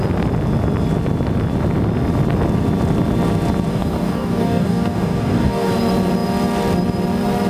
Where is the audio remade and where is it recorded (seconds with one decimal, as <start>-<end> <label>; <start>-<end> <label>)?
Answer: 0.0-3.7 recorded; 3.7-5.7 remade; 5.7-7.5 recorded